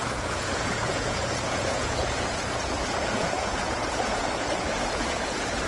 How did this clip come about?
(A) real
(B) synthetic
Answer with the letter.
B